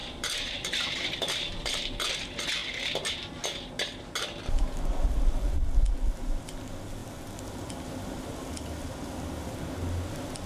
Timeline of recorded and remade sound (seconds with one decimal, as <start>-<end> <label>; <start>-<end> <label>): 0.0-1.8 remade; 1.8-10.5 recorded